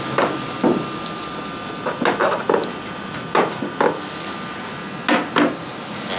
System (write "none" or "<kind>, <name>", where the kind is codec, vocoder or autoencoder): none